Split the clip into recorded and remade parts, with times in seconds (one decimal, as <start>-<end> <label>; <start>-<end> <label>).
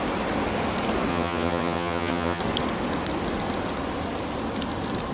0.0-1.1 recorded; 1.1-2.4 remade; 2.4-5.1 recorded